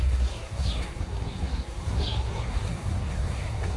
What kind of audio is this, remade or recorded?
remade